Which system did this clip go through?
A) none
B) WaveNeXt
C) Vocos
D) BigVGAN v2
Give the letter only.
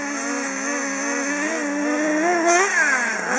A